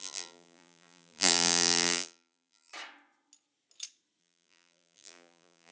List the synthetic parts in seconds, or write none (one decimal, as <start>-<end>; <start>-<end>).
0.0-2.7; 4.2-5.7